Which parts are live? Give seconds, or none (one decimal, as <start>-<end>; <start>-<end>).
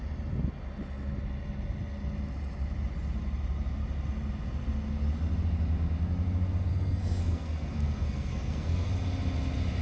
0.0-6.7; 8.9-9.8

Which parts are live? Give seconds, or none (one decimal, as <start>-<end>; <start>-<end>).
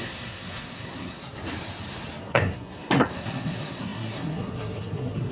1.2-2.2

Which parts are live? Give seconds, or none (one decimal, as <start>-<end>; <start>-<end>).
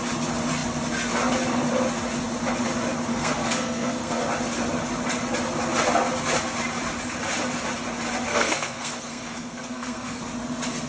0.0-3.1; 4.2-8.3; 10.2-10.9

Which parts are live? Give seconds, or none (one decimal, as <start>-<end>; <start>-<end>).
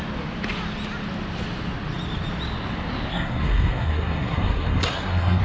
0.0-3.1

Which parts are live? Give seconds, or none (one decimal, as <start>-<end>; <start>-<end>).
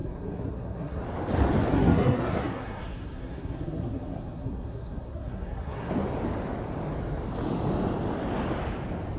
1.0-1.7; 5.9-9.2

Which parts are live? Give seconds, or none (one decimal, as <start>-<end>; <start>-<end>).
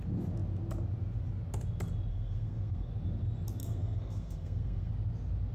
0.0-2.1; 2.9-3.6; 4.9-5.5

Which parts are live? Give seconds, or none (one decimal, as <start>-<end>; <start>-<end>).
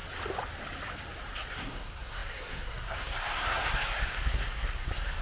0.0-1.5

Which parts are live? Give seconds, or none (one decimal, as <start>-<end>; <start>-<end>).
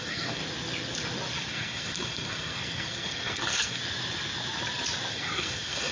0.4-1.5; 3.8-5.1